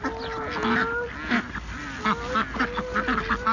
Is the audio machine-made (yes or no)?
no